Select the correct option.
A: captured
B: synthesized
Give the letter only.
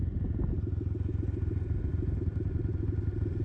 A